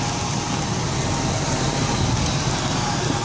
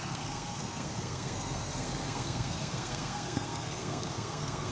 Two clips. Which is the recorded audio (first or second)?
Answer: first